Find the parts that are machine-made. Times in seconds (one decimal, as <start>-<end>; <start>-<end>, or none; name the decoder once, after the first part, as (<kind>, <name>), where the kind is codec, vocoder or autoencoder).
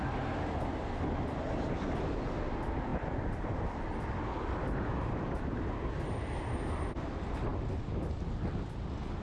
2.9-5.9 (vocoder, BigVGAN v2)